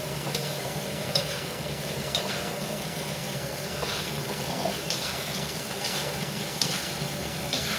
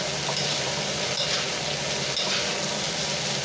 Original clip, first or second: second